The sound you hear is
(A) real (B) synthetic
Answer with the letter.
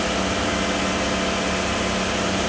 A